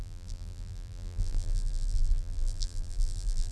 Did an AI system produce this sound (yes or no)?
yes